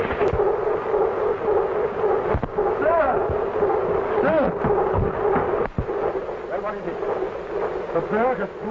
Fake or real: real